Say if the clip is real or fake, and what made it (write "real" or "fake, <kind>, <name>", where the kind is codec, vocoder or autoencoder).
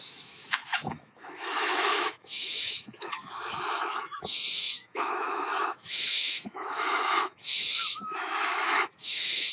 fake, autoencoder, DAC-VAE